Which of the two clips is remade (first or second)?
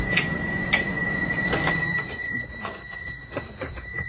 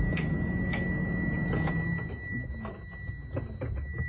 first